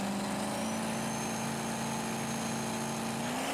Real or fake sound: real